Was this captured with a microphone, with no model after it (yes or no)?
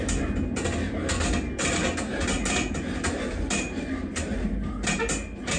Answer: yes